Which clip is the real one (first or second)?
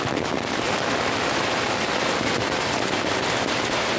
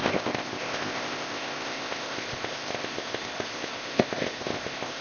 first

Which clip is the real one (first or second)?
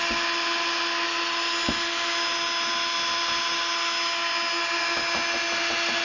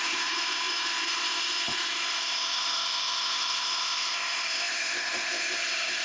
first